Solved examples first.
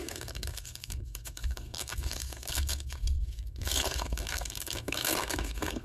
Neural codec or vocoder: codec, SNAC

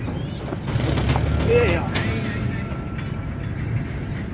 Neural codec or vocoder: none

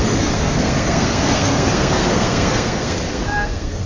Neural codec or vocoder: codec, SNAC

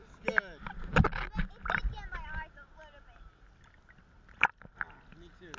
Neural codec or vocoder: none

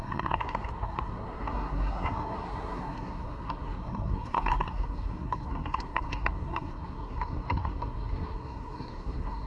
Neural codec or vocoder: codec, SNAC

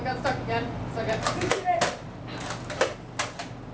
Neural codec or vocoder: none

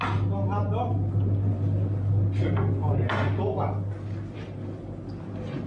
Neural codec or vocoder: none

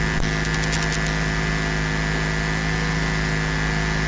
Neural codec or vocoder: none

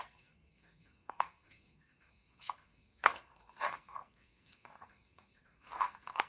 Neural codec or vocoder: codec, SNAC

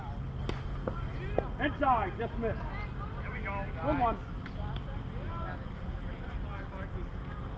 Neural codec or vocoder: none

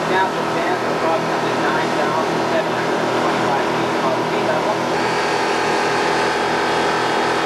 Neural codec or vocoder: none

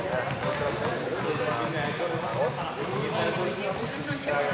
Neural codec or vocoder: none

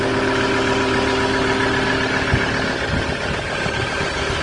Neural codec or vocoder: none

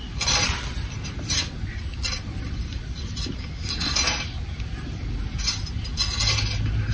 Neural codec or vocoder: none